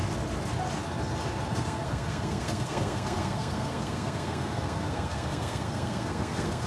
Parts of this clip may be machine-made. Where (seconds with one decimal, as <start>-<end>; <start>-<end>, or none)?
1.5-6.7